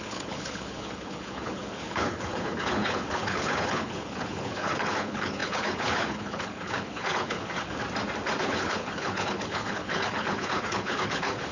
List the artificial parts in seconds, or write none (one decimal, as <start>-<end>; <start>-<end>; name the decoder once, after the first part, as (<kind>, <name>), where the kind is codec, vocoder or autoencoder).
0.0-7.8 (codec, HILCodec); 8.4-11.5